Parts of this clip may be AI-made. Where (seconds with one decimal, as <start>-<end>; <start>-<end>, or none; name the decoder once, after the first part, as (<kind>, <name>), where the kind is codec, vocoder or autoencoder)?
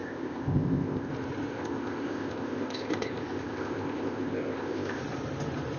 0.0-1.1 (codec, ZipCodec); 1.5-5.0